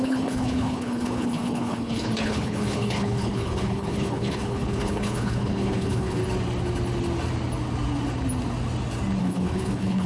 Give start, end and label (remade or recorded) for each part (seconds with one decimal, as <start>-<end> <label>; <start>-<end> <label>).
0.0-6.2 remade; 6.2-9.2 recorded; 9.2-10.1 remade